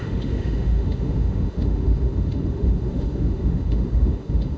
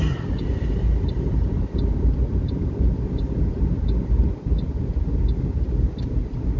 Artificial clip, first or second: first